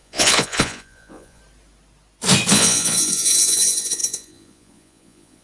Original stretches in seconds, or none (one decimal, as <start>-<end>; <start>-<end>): 1.4-2.5